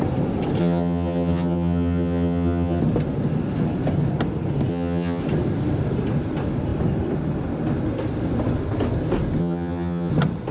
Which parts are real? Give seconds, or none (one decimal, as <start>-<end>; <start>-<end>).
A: 0.0-0.6; 2.8-4.7; 5.2-9.4; 10.1-10.5